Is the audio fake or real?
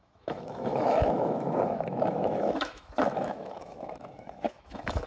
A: fake